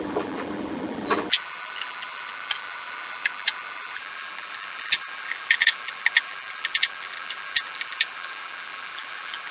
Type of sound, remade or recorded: remade